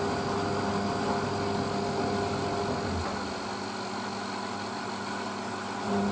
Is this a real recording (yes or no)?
yes